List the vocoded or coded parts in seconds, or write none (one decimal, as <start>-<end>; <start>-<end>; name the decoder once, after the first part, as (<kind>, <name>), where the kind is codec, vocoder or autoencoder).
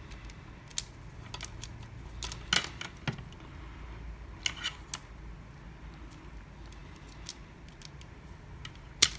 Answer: none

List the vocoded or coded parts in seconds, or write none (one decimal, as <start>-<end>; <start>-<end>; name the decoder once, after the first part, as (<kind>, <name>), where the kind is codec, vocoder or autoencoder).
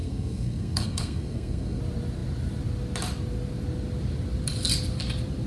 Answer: 0.0-1.8 (codec, SNAC)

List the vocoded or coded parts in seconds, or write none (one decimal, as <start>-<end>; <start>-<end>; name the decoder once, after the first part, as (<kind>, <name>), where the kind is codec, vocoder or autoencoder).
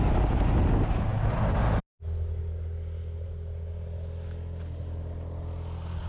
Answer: none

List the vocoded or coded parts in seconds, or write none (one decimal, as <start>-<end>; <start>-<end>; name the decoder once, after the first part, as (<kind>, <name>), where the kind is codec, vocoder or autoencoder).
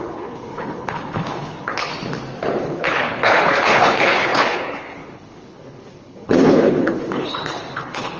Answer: 0.0-1.9 (codec, HILCodec); 2.6-8.2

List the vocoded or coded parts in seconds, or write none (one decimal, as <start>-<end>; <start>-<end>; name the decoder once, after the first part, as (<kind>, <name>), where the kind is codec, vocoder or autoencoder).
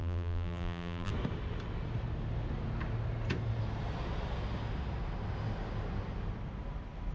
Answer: 0.0-1.1 (vocoder, BigVGAN v2)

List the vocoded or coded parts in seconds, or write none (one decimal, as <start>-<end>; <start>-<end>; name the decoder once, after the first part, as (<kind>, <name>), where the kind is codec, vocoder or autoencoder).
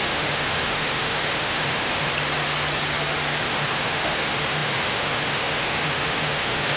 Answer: 0.0-2.1 (autoencoder, DAC-VAE); 3.4-6.8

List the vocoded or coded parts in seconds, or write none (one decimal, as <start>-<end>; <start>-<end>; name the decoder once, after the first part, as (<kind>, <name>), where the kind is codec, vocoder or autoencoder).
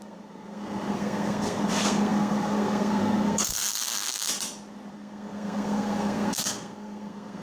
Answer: 0.0-4.2 (codec, SNAC); 4.9-7.4